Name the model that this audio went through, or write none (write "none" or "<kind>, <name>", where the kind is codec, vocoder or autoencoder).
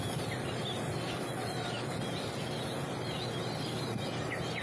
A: none